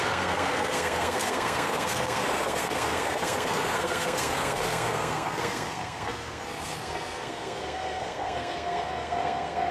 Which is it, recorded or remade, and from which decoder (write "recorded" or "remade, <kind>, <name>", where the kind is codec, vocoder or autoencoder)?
remade, codec, SNAC